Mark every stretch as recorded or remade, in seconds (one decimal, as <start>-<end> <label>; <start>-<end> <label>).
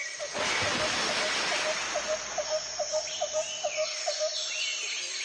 0.0-2.7 remade; 2.7-5.2 recorded